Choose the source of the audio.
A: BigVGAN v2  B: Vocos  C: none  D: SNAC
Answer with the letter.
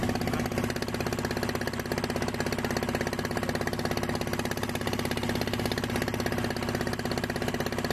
C